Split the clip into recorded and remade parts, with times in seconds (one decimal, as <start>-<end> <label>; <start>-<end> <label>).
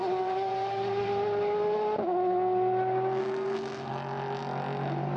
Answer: 0.0-3.2 recorded; 3.2-3.9 remade; 3.9-5.2 recorded